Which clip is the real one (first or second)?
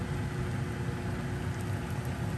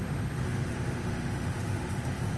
first